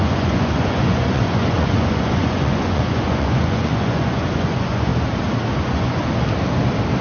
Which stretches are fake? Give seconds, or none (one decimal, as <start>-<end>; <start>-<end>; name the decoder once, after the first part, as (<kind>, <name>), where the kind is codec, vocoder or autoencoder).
0.0-4.9 (vocoder, Vocos); 5.6-6.0